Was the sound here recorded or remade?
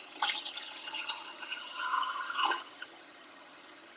remade